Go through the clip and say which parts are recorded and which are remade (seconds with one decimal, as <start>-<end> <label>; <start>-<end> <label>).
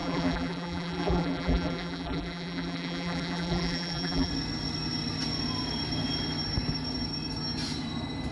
0.0-4.3 remade; 4.3-8.3 recorded